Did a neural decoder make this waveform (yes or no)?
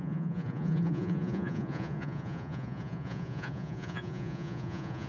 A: yes